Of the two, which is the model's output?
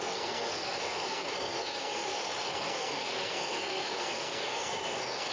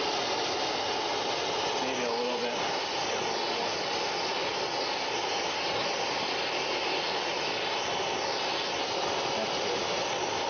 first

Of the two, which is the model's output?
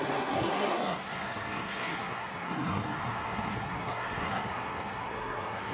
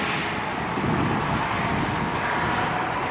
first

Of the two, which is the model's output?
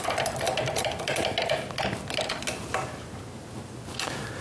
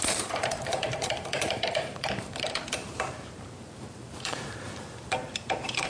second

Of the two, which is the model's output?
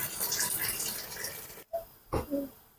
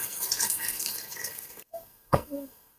second